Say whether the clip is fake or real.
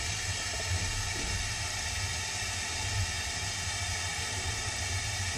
real